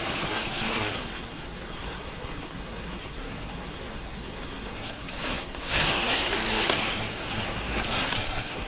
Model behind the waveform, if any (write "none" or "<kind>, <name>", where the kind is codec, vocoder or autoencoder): codec, SNAC